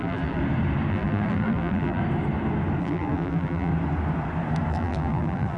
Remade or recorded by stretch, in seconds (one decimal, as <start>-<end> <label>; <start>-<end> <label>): 0.0-0.4 remade; 0.4-0.9 recorded; 0.9-2.0 remade; 2.0-2.8 recorded; 2.8-3.7 remade; 3.7-4.7 recorded; 4.7-5.6 remade